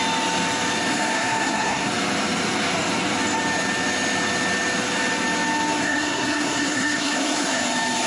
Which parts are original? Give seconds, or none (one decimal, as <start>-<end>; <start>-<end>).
0.0-0.9; 1.9-5.8; 7.6-8.1